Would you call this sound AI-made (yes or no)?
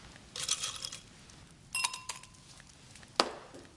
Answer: no